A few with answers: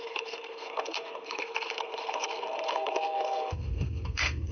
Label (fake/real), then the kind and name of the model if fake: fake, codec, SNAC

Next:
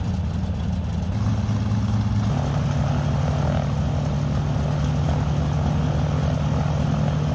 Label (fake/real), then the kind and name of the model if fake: real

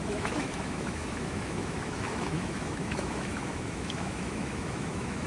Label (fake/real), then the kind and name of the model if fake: fake, autoencoder, DAC-VAE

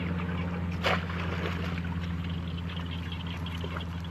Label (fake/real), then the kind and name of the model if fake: real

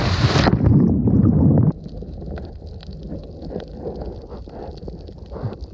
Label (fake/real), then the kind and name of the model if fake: real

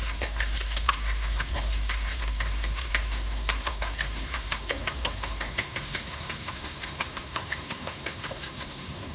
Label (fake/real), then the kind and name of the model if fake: fake, codec, SNAC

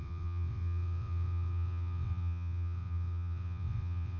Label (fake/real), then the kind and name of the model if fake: fake, vocoder, WaveNeXt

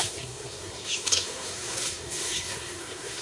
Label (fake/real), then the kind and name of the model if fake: fake, codec, SNAC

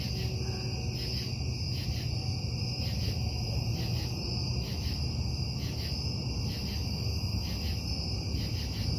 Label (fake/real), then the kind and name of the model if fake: real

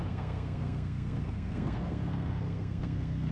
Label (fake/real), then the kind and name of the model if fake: fake, codec, SNAC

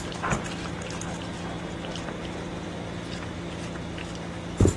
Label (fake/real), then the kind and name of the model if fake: real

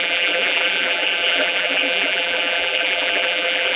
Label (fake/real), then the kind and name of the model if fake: fake, vocoder, BigVGAN v2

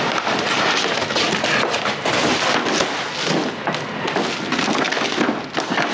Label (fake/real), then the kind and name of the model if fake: real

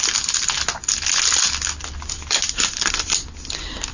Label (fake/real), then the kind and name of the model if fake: real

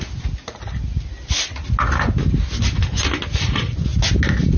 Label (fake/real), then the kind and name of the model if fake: real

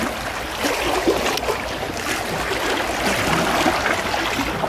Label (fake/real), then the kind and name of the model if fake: real